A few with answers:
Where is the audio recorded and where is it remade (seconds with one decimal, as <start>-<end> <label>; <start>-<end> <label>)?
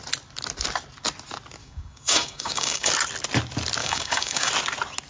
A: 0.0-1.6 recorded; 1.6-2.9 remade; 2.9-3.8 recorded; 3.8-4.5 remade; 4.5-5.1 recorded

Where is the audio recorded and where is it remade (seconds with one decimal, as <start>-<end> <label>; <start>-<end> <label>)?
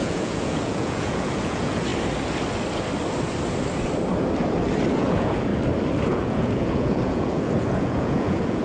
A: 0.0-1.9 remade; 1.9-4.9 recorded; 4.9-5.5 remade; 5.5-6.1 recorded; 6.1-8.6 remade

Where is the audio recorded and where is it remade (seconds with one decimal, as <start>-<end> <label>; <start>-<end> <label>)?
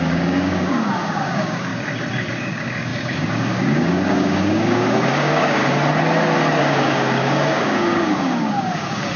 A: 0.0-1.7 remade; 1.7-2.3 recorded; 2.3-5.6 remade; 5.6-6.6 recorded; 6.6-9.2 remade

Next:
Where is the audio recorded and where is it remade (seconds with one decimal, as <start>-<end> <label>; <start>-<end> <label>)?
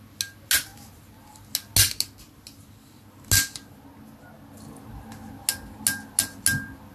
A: 0.0-6.9 recorded